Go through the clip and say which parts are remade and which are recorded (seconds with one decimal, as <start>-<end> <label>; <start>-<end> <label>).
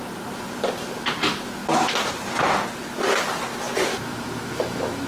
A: 0.0-3.9 recorded; 3.9-5.1 remade